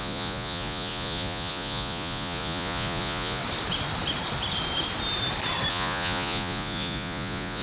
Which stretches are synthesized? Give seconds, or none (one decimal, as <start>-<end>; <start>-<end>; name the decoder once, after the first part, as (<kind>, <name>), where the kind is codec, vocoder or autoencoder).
0.0-3.4 (vocoder, Vocos); 5.7-7.6